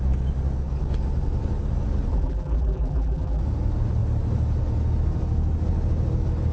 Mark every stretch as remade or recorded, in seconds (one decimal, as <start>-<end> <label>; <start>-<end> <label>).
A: 0.0-2.1 recorded; 2.1-3.4 remade; 3.4-6.5 recorded